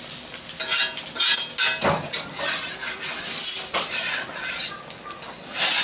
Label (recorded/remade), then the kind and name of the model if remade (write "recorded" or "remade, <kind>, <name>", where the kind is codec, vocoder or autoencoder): recorded